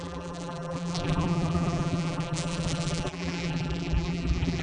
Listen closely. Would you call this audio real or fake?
fake